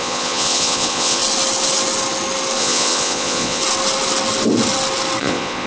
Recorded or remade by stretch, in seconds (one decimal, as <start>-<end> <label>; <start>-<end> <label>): 0.0-1.2 remade; 1.2-2.6 recorded; 2.6-3.6 remade; 3.6-5.2 recorded; 5.2-5.7 remade